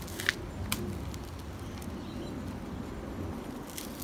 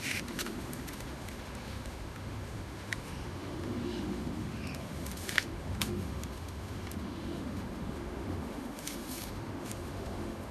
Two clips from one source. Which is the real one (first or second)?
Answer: first